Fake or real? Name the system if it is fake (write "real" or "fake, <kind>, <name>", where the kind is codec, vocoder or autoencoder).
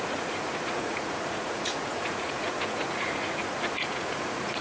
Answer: fake, vocoder, Vocos